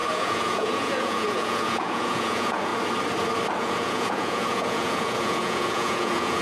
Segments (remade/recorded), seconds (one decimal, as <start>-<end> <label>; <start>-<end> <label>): 0.0-2.7 remade; 2.7-3.6 recorded; 3.6-6.4 remade